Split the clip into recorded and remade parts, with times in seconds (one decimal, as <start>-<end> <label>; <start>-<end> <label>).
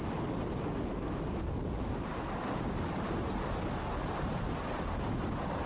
0.0-5.7 recorded